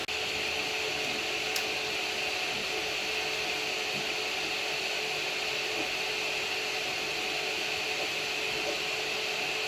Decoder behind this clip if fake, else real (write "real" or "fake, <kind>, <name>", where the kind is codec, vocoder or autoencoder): real